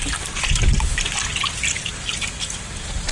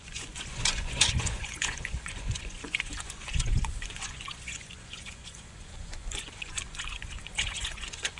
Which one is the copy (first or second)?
second